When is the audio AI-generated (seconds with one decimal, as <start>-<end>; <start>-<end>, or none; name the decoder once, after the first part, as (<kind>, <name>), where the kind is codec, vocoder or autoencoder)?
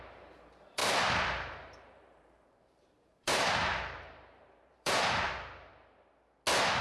0.0-5.7 (vocoder, BigVGAN v2)